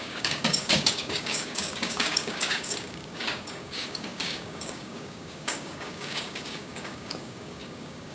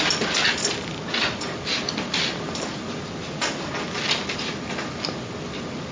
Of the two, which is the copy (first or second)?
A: first